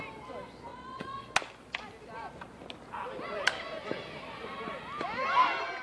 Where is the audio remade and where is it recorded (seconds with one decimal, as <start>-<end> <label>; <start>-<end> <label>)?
0.0-0.7 recorded; 0.7-1.2 remade; 1.2-5.8 recorded